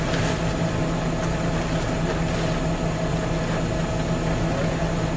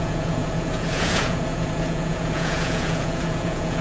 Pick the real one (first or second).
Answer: first